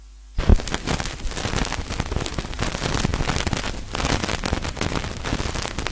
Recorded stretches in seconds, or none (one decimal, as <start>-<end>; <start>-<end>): 0.0-5.9